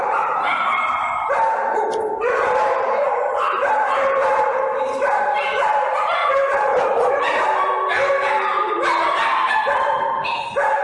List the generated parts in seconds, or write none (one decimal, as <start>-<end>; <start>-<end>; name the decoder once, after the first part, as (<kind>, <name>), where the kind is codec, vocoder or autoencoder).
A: 0.0-10.8 (vocoder, BigVGAN v2)

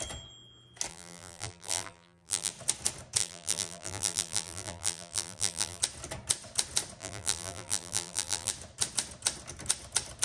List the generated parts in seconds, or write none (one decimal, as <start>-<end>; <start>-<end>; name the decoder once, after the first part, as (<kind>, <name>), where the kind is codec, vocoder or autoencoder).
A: 0.9-2.5 (vocoder, BigVGAN v2); 3.2-5.8; 7.0-8.5

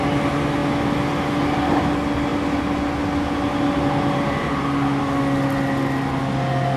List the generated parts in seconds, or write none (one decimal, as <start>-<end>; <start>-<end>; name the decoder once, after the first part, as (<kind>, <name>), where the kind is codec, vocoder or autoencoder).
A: none

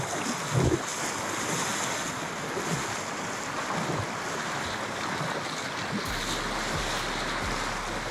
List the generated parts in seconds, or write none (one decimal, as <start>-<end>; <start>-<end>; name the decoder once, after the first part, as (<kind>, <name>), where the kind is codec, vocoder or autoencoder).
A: none

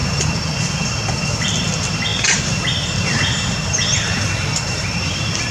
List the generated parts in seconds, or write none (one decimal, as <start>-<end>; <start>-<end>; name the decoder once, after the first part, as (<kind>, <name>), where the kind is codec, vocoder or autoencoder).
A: 0.0-2.1 (vocoder, BigVGAN v2)

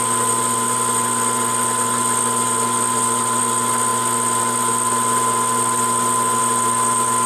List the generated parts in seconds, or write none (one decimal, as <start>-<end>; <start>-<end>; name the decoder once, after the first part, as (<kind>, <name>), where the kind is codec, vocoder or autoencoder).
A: none

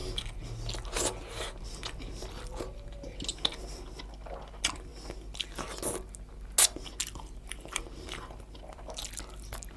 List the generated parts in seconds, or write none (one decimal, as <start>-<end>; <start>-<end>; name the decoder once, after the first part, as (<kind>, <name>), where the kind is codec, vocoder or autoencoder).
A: 7.0-9.1 (vocoder, BigVGAN v2)

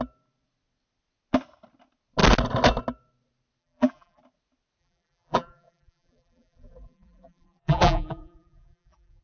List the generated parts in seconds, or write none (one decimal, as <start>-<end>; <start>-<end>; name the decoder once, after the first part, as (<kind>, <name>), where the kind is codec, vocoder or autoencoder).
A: 3.6-4.2 (vocoder, BigVGAN v2); 4.8-9.2